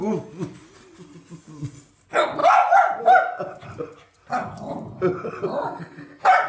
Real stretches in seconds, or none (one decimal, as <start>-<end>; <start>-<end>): 0.0-2.4; 3.0-6.5